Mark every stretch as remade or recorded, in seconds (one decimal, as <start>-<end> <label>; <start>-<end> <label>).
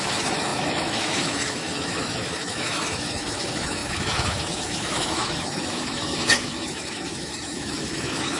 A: 0.0-8.4 remade